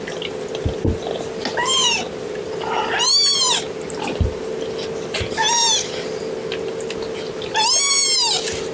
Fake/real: real